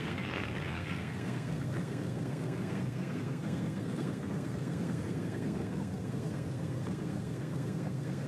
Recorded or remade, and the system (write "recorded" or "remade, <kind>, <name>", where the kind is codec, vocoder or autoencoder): remade, codec, SNAC